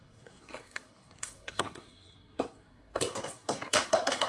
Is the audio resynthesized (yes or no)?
yes